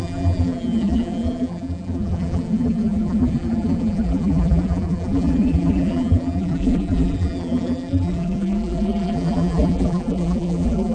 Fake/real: fake